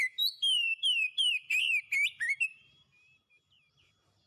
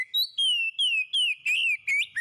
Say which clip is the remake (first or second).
first